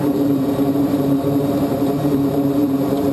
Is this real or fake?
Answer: fake